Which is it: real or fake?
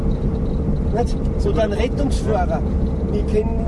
real